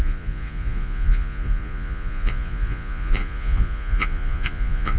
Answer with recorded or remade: remade